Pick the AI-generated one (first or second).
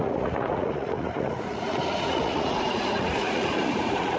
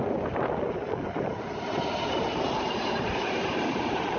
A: first